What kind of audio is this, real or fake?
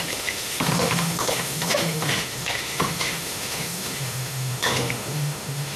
fake